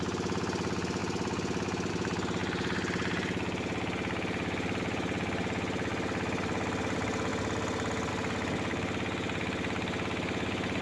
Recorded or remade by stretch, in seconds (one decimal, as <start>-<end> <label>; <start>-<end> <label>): 0.0-10.8 recorded